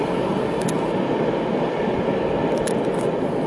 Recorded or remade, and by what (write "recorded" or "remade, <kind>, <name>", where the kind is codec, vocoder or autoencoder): recorded